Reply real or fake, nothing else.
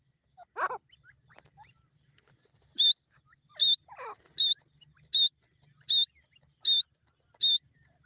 real